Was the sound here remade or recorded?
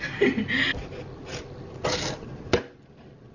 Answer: recorded